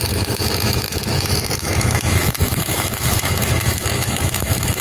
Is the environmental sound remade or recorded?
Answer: remade